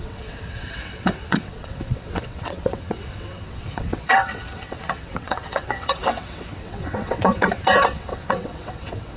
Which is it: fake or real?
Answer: fake